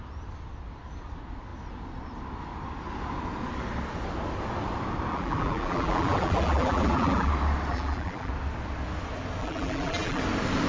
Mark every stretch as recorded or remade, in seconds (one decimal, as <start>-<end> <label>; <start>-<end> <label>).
0.0-5.1 recorded; 5.1-7.3 remade; 7.3-7.7 recorded; 7.7-8.3 remade; 8.3-9.4 recorded; 9.4-10.2 remade; 10.2-10.7 recorded